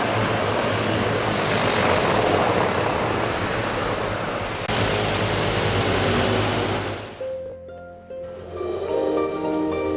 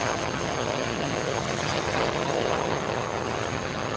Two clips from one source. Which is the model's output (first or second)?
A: second